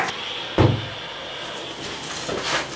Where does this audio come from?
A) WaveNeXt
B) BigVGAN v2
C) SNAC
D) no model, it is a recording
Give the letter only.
D